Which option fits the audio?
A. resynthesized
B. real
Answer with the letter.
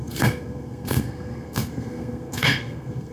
A